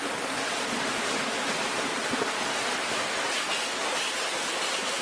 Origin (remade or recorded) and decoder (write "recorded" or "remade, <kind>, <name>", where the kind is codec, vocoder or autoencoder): recorded